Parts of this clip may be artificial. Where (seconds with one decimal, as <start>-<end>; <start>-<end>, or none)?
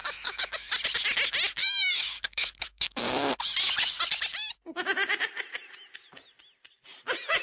0.0-0.7; 1.6-3.3